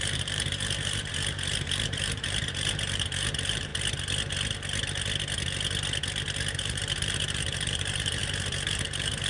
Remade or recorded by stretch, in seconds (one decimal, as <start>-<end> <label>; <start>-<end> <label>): 0.0-3.7 remade; 3.7-6.6 recorded; 6.6-9.3 remade